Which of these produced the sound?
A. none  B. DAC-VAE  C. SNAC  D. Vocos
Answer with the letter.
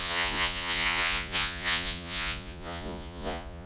D